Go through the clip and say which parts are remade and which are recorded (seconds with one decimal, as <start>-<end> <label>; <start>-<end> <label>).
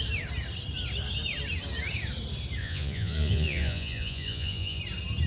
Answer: 0.0-2.6 recorded; 2.6-4.8 remade; 4.8-5.3 recorded